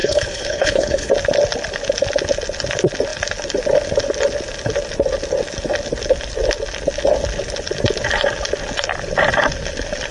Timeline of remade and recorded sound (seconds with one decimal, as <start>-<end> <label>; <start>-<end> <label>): 0.0-1.1 remade; 1.1-10.1 recorded